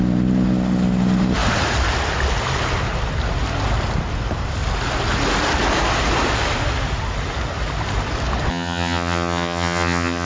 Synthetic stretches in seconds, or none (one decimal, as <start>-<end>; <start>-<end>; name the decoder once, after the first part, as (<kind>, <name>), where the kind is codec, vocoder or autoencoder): 8.5-10.3 (vocoder, HiFi-GAN)